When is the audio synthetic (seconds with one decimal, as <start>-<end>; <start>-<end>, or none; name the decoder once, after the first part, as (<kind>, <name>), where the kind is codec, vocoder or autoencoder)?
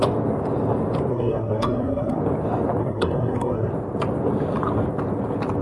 1.1-2.2 (codec, SNAC); 2.8-3.7